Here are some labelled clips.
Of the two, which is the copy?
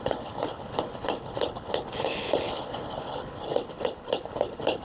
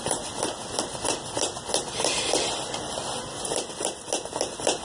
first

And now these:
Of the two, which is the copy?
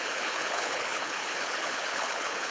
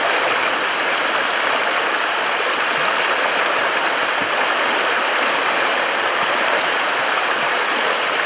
first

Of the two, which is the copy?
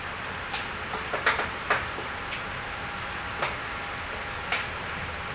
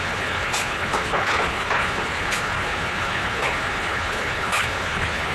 second